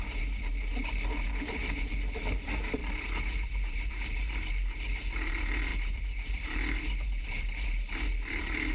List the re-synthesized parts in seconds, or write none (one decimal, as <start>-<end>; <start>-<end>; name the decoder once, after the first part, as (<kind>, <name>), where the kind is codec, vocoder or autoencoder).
0.0-8.7 (vocoder, BigVGAN v2)